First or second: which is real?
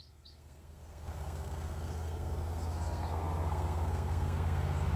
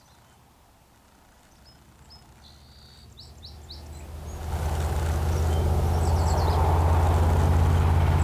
second